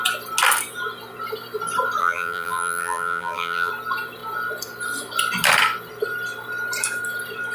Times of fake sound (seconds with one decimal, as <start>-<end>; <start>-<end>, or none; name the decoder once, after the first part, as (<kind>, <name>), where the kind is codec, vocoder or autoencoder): 2.0-3.7 (vocoder, BigVGAN v2)